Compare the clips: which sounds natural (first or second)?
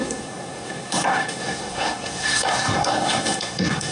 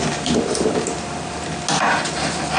second